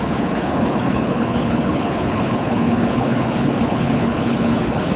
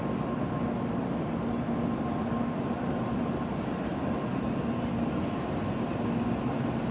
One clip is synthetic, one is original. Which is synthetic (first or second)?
first